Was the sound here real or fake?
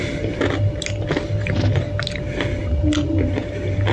real